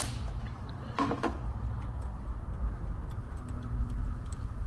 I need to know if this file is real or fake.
real